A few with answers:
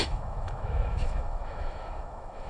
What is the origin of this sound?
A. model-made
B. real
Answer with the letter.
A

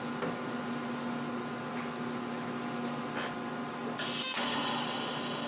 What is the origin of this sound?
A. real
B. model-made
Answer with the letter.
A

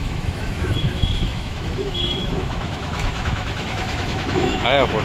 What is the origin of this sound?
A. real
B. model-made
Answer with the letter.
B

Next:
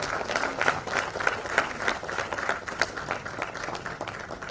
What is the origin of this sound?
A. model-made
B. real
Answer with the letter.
B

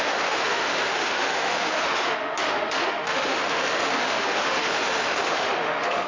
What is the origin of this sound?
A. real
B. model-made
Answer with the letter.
B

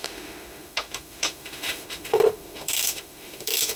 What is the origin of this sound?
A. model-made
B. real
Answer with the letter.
A